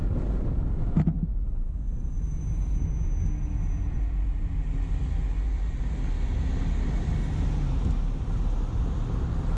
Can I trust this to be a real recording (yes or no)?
yes